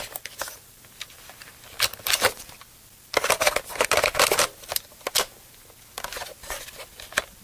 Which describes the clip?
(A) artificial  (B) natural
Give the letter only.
B